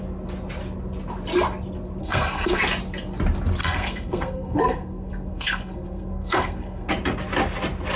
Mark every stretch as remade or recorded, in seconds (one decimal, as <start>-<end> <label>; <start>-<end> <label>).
0.0-2.0 recorded; 2.0-2.6 remade; 2.6-3.6 recorded; 3.6-6.9 remade; 6.9-8.0 recorded